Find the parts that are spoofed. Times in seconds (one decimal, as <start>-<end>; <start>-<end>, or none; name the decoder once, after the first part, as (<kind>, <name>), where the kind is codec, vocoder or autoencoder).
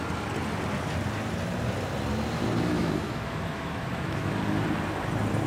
2.8-4.4 (autoencoder, DAC-VAE)